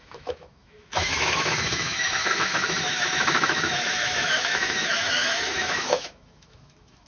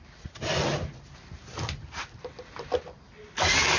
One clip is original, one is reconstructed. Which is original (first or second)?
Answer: second